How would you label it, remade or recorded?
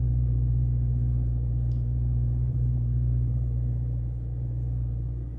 remade